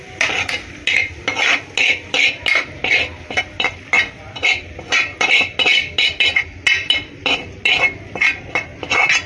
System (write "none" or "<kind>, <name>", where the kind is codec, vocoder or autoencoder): none